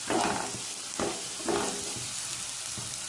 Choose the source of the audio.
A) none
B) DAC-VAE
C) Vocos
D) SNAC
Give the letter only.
A